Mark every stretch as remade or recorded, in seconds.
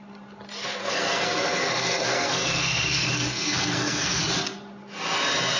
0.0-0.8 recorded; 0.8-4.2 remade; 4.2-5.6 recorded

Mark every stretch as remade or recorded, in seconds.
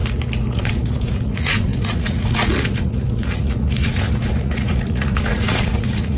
0.0-0.5 recorded; 0.5-6.2 remade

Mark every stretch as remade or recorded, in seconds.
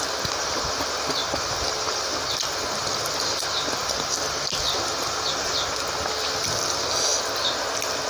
0.0-8.1 recorded